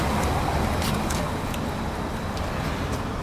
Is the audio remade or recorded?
recorded